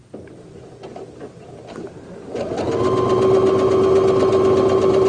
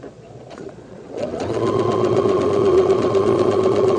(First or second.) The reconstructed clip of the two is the second